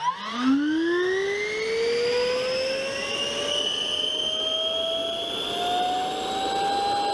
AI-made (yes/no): no